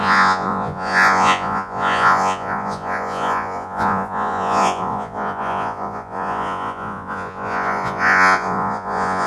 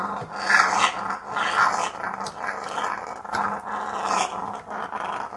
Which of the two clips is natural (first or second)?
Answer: second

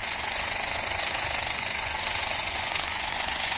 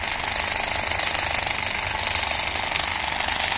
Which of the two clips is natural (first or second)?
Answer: second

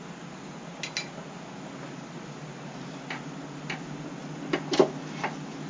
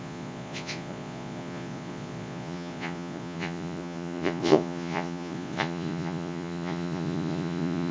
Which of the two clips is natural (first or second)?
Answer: first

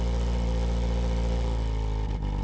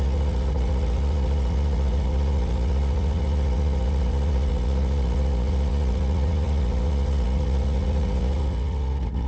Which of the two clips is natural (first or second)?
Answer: first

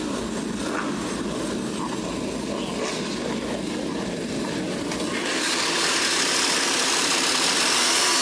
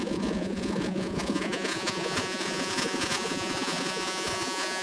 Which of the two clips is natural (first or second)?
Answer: first